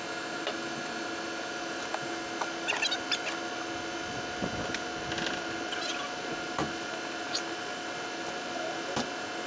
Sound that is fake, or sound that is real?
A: real